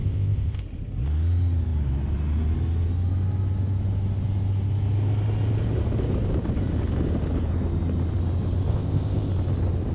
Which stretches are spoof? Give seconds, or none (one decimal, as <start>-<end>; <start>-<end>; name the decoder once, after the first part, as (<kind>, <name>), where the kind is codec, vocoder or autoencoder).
0.0-0.6 (codec, ZipCodec); 8.7-9.3